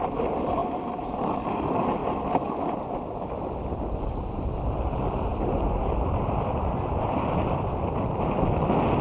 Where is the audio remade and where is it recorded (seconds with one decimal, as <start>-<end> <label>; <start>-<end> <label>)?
0.0-0.6 remade; 0.6-1.1 recorded; 1.1-2.0 remade; 2.0-4.4 recorded; 4.4-9.0 remade